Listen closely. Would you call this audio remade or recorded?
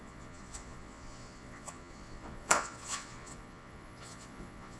remade